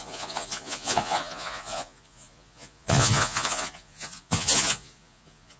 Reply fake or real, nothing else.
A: fake